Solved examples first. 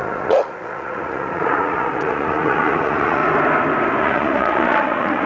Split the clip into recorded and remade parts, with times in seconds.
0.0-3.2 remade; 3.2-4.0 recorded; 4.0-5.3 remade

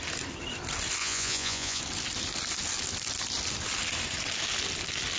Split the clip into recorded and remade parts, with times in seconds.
0.0-1.0 recorded; 1.0-1.8 remade; 1.8-5.2 recorded

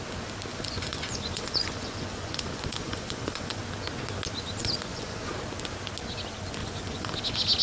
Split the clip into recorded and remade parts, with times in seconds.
0.0-0.5 recorded; 0.5-3.6 remade; 3.6-4.6 recorded; 4.6-5.3 remade; 5.3-6.6 recorded; 6.6-7.1 remade; 7.1-7.6 recorded

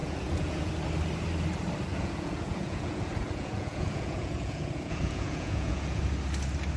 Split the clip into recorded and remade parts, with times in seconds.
0.0-0.7 remade; 0.7-1.9 recorded; 1.9-6.0 remade; 6.0-6.8 recorded

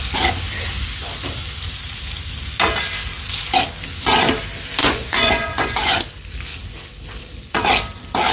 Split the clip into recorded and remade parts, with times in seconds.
0.0-4.8 recorded; 4.8-6.0 remade; 6.0-8.3 recorded

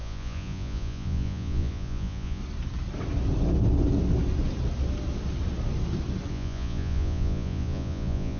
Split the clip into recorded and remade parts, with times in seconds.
0.0-2.4 remade; 2.4-6.3 recorded; 6.3-8.4 remade